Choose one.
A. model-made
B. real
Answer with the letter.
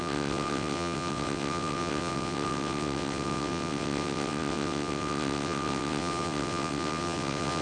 A